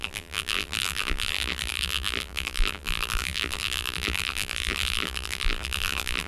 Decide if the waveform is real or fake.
fake